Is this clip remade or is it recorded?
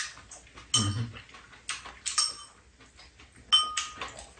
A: recorded